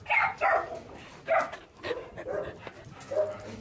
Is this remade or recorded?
recorded